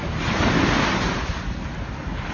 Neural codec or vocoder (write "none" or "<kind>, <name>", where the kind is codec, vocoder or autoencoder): none